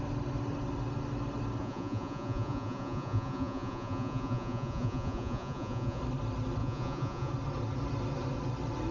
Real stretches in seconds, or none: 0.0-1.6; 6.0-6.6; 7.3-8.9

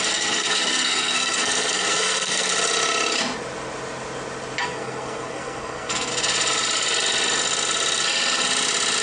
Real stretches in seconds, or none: 2.5-4.6; 6.1-9.0